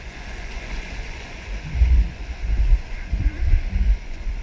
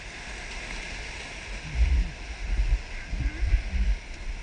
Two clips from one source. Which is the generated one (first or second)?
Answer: first